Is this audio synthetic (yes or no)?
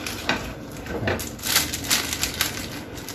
no